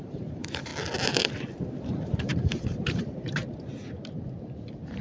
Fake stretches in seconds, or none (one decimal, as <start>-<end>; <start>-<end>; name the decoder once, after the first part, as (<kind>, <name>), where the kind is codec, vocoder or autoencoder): 0.0-0.7 (vocoder, BigVGAN v2); 1.7-3.4